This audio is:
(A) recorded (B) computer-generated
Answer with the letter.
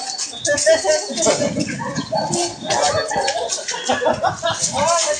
A